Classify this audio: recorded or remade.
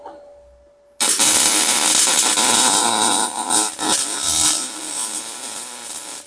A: recorded